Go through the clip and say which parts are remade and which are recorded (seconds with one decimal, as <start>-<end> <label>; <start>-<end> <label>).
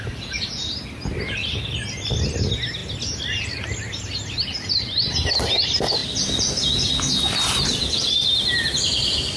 0.0-9.4 recorded